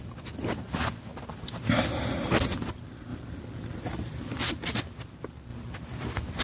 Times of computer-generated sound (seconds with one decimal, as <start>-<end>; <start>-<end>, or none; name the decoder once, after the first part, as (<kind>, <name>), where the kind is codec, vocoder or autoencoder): 3.1-4.4 (vocoder, BigVGAN v2)